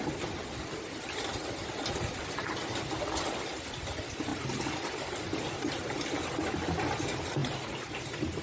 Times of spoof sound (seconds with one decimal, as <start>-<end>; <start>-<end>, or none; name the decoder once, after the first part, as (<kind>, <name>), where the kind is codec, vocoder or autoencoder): none